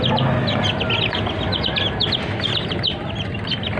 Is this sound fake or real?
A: real